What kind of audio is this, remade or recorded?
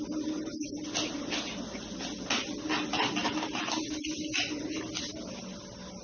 recorded